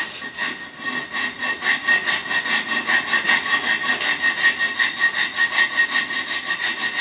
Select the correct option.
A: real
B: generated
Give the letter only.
A